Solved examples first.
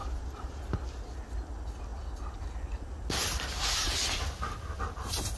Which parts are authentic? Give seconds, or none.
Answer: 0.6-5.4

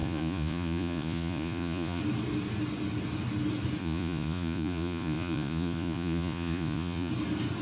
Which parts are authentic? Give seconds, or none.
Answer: 2.0-3.8; 7.1-7.6

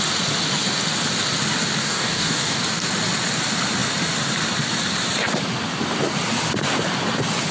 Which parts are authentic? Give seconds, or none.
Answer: 0.0-1.8; 2.6-7.5

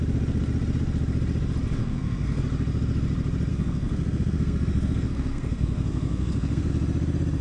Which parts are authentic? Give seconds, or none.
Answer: 0.0-1.8; 2.4-3.5; 6.7-7.4

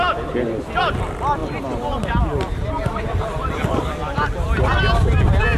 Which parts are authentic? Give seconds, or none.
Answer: 0.0-2.9; 3.9-5.6

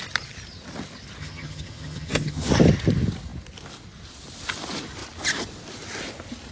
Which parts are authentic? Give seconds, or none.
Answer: 0.0-1.2; 2.5-6.5

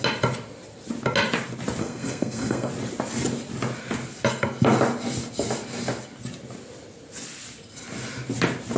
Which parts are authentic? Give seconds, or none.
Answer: 0.0-1.8; 2.7-8.8